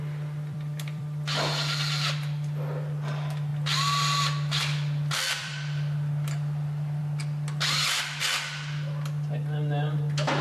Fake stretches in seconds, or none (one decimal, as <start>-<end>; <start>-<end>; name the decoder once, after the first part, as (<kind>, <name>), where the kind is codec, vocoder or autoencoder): 0.0-3.5 (vocoder, BigVGAN v2); 4.6-7.0